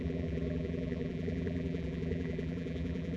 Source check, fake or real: fake